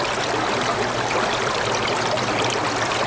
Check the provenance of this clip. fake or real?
real